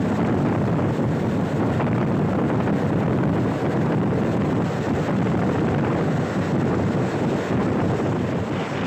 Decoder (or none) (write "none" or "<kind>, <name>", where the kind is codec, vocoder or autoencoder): vocoder, BigVGAN v2